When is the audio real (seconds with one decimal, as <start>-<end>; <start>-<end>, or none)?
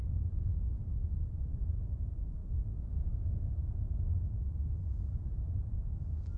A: 0.0-6.4